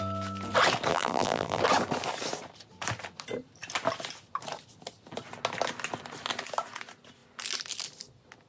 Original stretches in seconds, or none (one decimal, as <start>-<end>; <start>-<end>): 0.0-0.9; 1.6-8.5